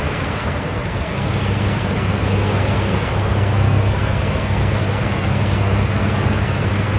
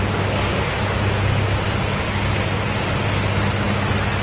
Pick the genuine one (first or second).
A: second